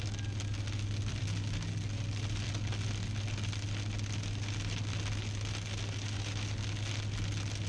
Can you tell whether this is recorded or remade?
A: recorded